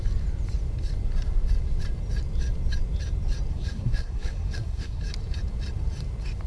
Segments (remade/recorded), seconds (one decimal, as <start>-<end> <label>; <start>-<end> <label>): 0.0-3.5 recorded; 3.5-5.0 remade; 5.0-6.5 recorded